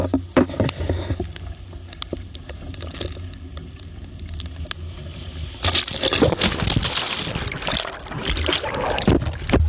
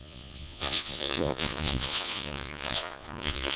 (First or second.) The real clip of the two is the first